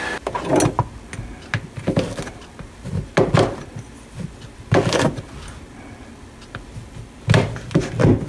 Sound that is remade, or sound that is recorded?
recorded